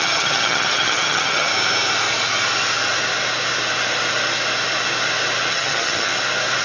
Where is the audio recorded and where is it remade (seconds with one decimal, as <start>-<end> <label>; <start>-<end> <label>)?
0.0-1.5 remade; 1.5-5.5 recorded; 5.5-6.1 remade; 6.1-6.6 recorded